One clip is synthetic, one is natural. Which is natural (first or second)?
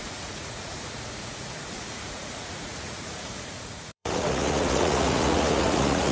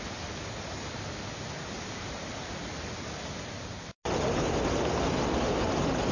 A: second